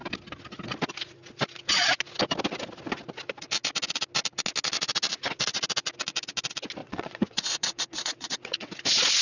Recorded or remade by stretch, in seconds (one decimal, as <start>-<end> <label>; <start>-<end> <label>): 0.0-6.8 recorded; 6.8-8.7 remade; 8.7-9.2 recorded